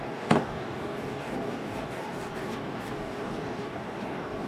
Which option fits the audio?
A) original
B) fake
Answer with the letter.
B